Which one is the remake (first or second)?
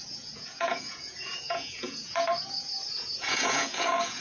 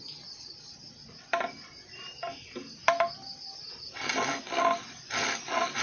first